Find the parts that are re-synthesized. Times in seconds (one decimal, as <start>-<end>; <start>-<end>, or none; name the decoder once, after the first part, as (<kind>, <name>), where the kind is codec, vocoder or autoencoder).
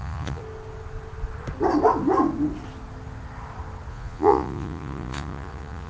0.0-0.4 (vocoder, Vocos); 3.9-5.9